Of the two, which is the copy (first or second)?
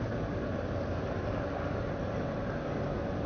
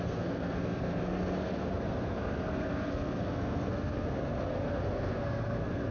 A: second